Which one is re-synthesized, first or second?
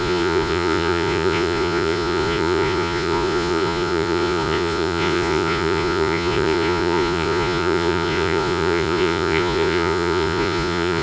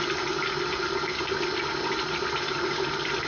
first